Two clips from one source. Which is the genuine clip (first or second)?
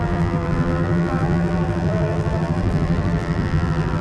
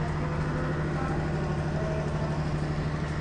second